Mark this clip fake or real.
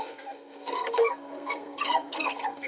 fake